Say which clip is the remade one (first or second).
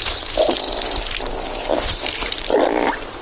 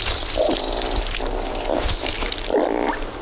first